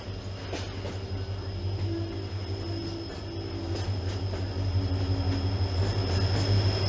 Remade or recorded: recorded